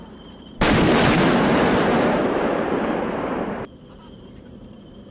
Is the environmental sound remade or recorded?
remade